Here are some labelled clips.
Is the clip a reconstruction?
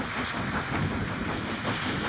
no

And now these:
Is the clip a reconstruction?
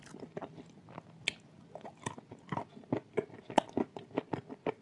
no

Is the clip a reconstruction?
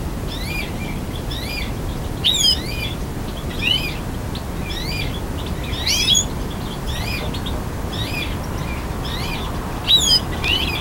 no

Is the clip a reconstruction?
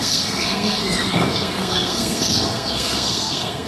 yes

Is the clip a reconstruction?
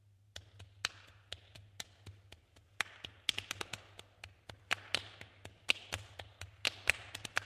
no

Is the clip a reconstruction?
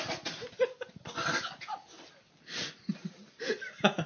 no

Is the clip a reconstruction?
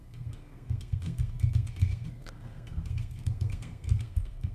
yes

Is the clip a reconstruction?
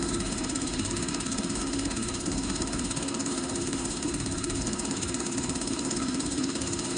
yes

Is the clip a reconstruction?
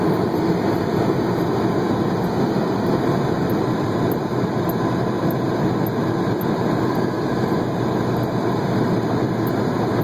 no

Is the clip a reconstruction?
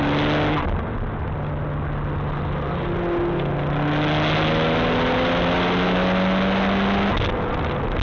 no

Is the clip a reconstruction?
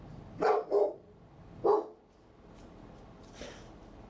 no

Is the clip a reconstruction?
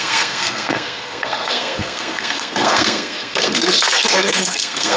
yes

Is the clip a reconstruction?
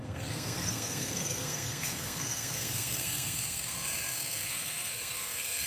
yes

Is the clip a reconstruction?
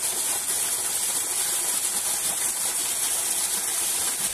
no